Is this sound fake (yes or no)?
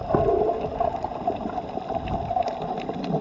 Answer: no